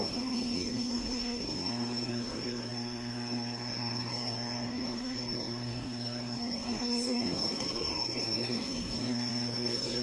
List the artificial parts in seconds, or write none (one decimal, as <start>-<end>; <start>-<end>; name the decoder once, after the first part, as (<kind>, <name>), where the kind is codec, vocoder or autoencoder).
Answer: 0.0-10.0 (codec, SNAC)